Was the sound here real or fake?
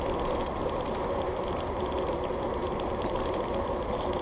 real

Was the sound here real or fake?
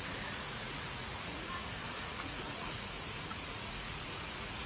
fake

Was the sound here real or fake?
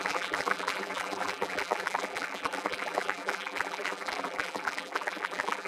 fake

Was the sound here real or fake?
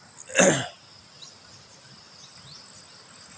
real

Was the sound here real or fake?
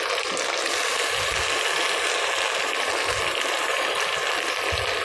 real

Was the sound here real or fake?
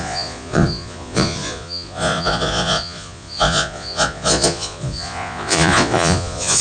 fake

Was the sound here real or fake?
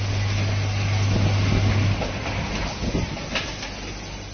real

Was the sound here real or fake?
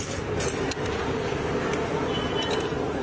real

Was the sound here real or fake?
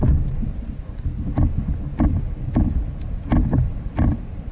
real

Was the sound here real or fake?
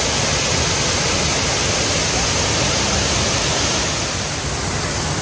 real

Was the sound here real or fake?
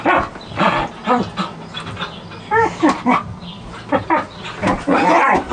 real